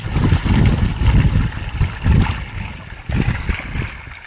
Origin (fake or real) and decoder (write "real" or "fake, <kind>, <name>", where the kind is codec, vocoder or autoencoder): real